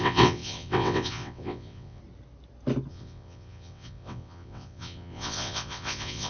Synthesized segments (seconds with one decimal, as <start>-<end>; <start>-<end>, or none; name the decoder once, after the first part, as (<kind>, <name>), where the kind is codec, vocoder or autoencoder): 0.0-2.0 (vocoder, WaveNeXt); 2.9-6.3